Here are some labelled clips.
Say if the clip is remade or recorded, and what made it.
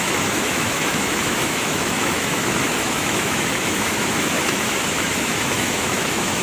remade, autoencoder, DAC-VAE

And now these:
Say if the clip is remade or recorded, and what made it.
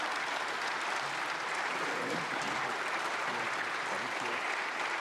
recorded